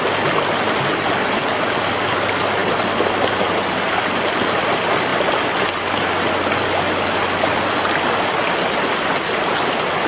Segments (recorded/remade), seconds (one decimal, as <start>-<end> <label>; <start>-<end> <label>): 0.0-10.1 recorded